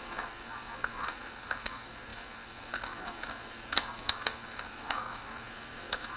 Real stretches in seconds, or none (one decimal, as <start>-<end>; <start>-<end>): none